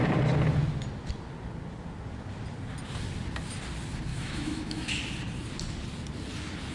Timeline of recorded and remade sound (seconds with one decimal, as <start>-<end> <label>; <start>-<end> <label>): 0.0-4.1 recorded; 4.1-5.0 remade; 5.0-6.7 recorded